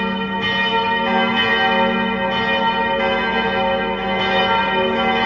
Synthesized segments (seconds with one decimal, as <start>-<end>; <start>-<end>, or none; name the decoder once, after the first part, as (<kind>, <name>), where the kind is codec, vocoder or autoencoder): none